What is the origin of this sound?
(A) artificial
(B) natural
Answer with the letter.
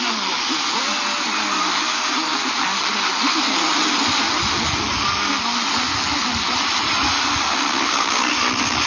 B